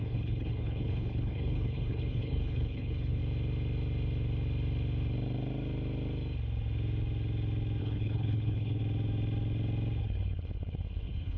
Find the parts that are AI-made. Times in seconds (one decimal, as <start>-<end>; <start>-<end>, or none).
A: 0.0-3.2; 7.8-8.8; 10.0-11.4